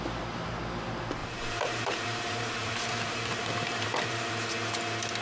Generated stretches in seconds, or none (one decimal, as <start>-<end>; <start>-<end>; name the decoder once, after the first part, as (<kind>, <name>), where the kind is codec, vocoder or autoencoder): 1.2-4.3 (vocoder, BigVGAN v2)